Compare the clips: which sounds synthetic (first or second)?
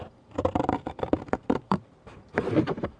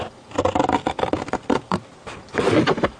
first